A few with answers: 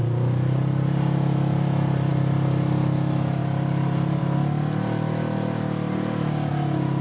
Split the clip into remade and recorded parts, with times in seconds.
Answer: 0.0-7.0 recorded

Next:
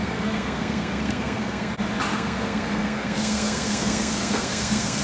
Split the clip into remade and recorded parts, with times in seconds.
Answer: 0.0-1.7 remade; 1.7-2.1 recorded; 2.1-5.0 remade